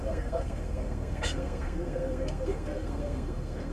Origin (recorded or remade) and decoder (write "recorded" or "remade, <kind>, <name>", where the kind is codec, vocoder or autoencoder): remade, codec, SNAC